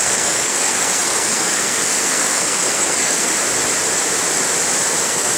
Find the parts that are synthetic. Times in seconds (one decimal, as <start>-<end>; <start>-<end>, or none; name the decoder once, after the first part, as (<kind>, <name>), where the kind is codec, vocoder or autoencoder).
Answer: 0.0-3.3 (codec, SNAC); 5.0-5.4